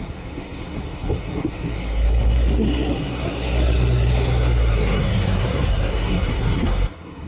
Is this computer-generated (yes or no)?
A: yes